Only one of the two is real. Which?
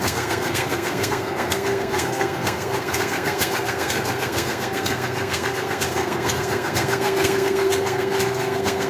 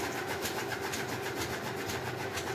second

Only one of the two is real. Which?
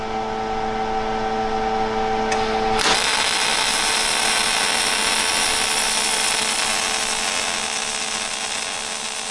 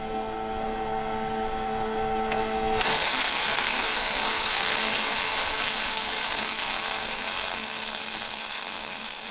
first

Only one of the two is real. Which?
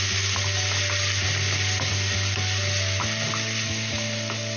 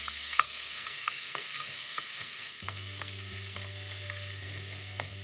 first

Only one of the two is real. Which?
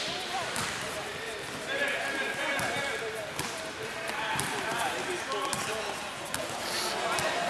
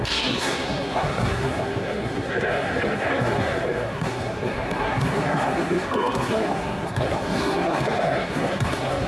first